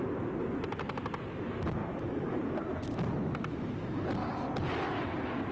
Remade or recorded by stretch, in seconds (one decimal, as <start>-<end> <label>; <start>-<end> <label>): 0.0-1.8 recorded; 1.8-2.6 remade; 2.6-5.5 recorded